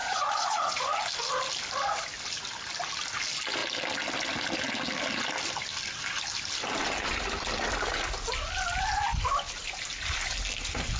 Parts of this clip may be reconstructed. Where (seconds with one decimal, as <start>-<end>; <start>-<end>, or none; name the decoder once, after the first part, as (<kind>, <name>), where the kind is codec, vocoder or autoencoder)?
0.0-0.9 (vocoder, Vocos)